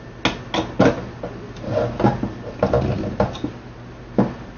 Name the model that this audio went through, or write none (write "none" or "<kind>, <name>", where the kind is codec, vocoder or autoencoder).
none